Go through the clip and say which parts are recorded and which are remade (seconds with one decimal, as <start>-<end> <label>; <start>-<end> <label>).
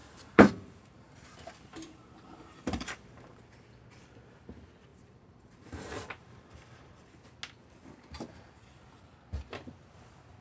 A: 0.0-3.4 remade; 3.4-4.9 recorded; 4.9-7.2 remade; 7.2-10.4 recorded